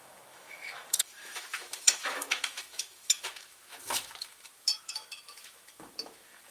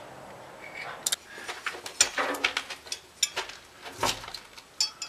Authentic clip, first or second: second